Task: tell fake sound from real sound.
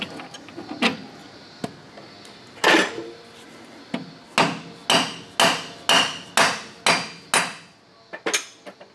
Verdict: real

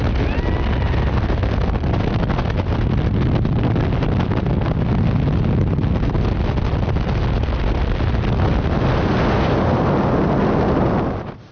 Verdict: real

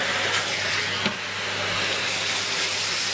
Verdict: real